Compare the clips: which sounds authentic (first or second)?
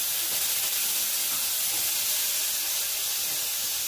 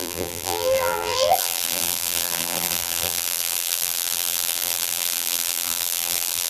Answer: first